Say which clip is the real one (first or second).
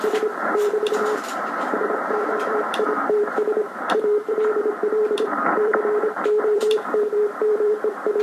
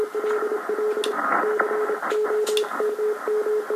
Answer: second